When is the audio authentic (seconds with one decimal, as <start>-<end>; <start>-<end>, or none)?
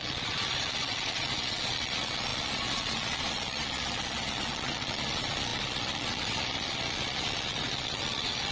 none